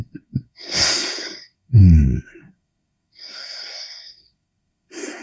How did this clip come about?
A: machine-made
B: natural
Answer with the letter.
A